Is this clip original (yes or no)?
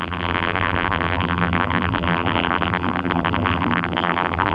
no